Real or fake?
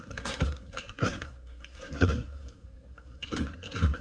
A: fake